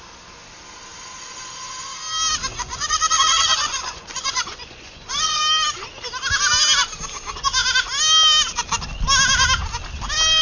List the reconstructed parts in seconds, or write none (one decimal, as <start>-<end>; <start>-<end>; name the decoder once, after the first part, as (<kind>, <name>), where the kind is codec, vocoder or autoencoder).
2.5-5.4 (vocoder, Vocos)